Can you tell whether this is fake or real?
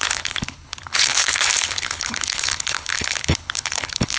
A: fake